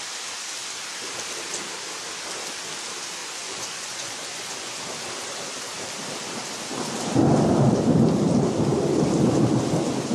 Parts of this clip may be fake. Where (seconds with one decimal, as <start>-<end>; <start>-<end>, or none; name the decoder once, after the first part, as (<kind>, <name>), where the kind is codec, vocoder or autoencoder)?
3.2-4.8 (vocoder, Vocos)

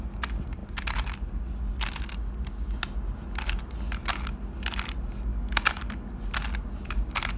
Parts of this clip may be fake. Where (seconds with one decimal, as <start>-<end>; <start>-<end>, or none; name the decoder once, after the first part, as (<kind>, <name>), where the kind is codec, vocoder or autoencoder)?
5.3-5.9 (codec, DAC)

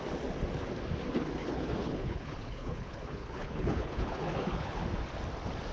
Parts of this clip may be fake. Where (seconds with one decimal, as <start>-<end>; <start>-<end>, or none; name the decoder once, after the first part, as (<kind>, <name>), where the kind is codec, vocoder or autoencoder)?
1.4-4.8 (codec, HILCodec)